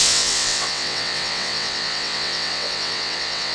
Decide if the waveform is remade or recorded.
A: remade